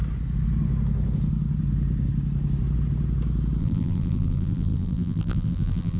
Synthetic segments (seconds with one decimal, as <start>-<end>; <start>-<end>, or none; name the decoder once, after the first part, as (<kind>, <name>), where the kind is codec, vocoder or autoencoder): 3.6-6.0 (vocoder, BigVGAN v2)